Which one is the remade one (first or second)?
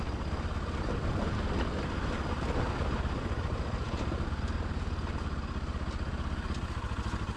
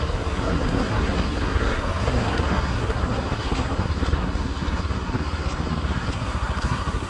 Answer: second